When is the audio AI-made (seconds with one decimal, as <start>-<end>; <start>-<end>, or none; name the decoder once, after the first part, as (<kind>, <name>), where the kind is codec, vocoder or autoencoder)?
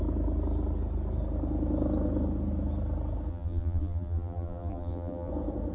3.3-5.3 (vocoder, BigVGAN v2)